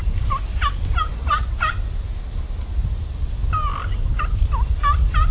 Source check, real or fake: real